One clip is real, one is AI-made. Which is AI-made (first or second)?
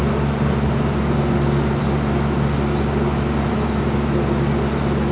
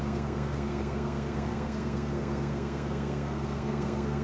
second